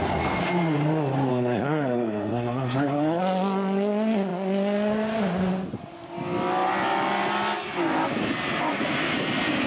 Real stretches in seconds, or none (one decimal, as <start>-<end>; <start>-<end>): 0.0-1.3; 3.2-9.7